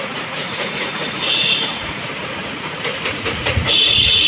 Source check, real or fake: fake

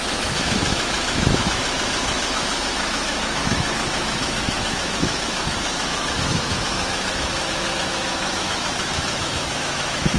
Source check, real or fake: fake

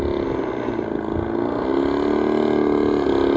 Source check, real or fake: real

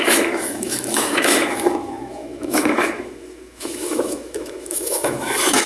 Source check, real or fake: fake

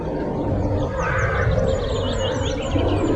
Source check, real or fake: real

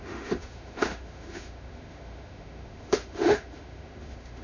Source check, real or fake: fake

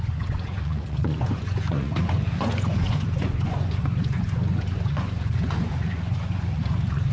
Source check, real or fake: fake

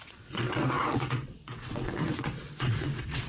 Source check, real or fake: fake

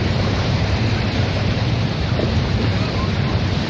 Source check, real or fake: fake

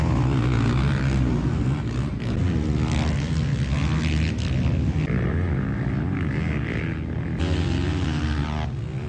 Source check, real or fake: real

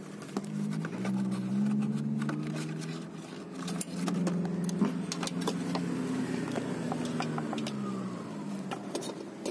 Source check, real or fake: real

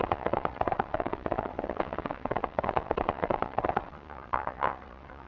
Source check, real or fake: fake